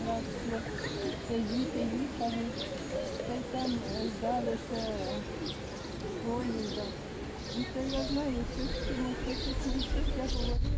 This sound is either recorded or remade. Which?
recorded